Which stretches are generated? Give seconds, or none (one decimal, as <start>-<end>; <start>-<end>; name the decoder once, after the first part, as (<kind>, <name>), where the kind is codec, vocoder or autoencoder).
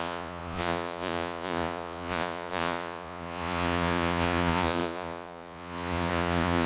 0.0-6.7 (vocoder, Vocos)